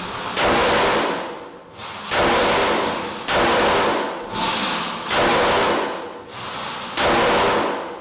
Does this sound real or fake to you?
real